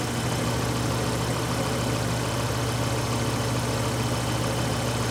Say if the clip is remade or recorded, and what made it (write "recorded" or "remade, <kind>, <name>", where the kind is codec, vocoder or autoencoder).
recorded